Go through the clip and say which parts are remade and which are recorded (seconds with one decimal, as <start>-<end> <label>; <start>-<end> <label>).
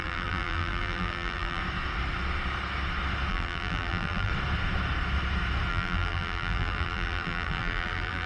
0.0-1.6 remade; 1.6-3.3 recorded; 3.3-4.3 remade; 4.3-5.7 recorded; 5.7-8.3 remade